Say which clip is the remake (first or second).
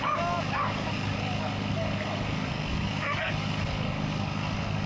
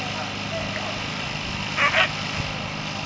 first